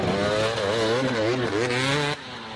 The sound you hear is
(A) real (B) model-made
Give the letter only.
A